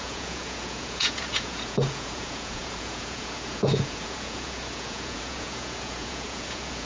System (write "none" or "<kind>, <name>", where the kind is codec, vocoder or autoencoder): vocoder, Vocos